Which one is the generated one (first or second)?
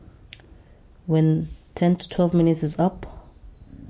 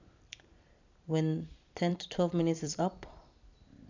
second